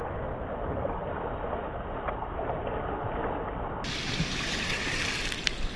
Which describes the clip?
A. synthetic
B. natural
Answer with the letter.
B